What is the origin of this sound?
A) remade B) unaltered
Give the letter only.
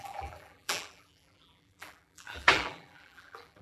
A